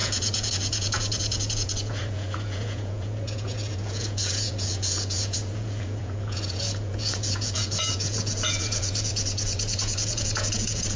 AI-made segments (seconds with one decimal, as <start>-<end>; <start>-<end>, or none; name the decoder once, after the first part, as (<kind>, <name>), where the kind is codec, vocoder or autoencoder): 0.0-11.0 (vocoder, Vocos)